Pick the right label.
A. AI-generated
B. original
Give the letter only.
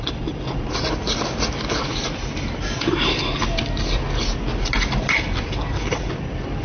B